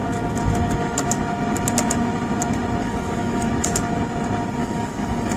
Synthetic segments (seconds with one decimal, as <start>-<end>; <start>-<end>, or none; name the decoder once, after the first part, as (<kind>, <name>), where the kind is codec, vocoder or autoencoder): 2.8-3.5 (codec, DAC); 4.6-5.4